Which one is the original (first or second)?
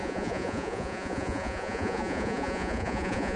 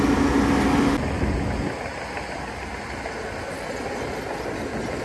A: second